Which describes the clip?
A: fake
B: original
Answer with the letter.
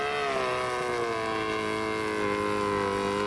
B